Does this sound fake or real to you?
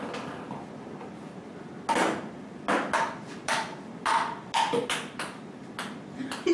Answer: real